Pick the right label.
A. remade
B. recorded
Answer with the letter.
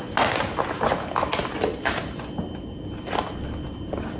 B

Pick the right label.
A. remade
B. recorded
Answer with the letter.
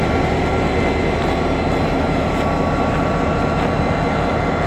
B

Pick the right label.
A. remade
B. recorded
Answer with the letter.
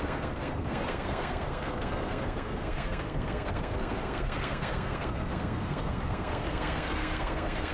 A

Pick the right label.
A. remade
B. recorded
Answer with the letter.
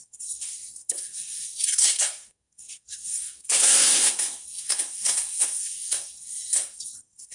A